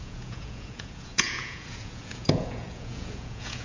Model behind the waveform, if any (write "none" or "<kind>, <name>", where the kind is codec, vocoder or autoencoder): vocoder, Vocos